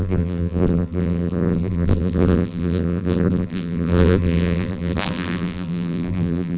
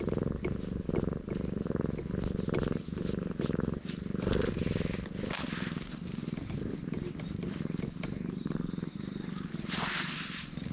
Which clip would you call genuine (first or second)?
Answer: second